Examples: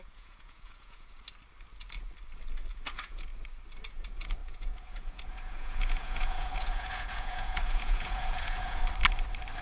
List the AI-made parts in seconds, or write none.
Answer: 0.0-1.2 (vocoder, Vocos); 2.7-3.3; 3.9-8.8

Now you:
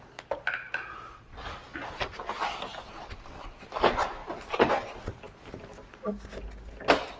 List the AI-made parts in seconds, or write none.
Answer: none

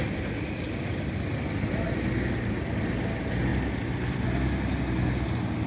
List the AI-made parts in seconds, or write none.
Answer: none

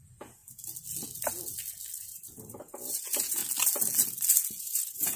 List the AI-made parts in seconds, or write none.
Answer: 0.0-0.4 (vocoder, Vocos); 2.0-3.4; 4.6-5.2

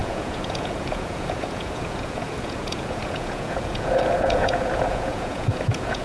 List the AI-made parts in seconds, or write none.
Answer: 0.0-6.0 (vocoder, Vocos)